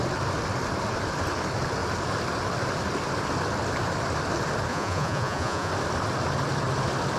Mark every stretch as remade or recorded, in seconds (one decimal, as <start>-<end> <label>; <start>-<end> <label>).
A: 0.0-4.7 recorded; 4.7-5.7 remade; 5.7-7.2 recorded